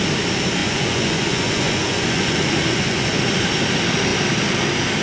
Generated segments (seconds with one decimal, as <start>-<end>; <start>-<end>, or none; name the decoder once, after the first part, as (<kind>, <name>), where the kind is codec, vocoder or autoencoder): 0.6-3.2 (vocoder, Vocos)